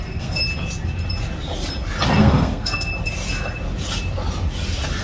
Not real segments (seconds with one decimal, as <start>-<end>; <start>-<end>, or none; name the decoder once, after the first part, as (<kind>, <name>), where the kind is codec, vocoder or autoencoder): 0.0-0.4 (codec, SNAC); 2.2-2.9